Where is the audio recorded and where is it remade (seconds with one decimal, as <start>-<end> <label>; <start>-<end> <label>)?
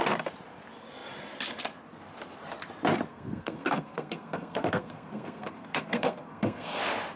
0.0-3.1 recorded; 3.1-6.8 remade; 6.8-7.2 recorded